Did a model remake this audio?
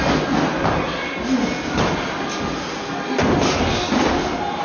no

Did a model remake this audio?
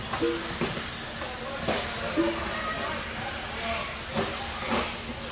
no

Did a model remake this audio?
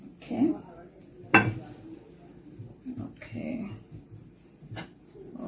no